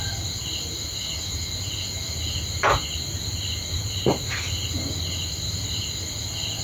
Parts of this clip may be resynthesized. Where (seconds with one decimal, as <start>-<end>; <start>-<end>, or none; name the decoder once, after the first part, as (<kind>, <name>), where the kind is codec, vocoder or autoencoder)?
none